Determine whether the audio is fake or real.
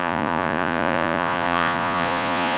fake